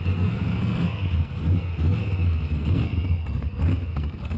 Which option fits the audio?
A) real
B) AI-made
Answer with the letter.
B